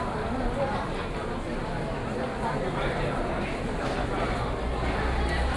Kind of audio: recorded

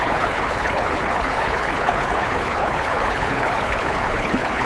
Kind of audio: remade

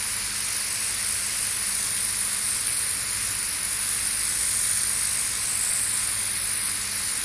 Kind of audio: recorded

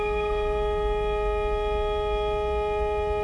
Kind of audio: recorded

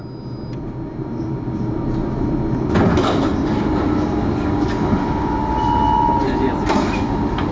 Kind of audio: recorded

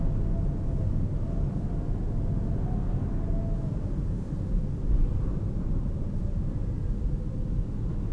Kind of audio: recorded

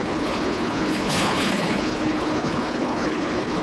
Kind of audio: remade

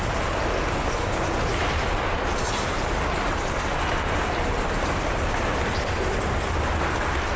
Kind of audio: recorded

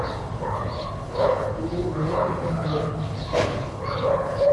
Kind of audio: remade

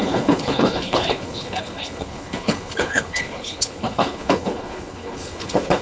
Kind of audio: remade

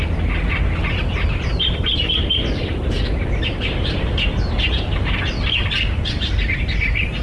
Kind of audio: recorded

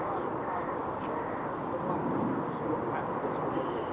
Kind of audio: recorded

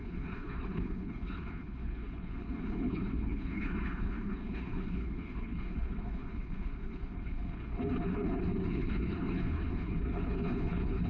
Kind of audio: remade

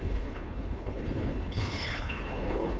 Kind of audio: remade